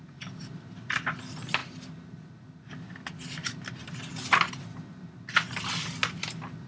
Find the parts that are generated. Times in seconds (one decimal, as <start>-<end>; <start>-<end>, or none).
none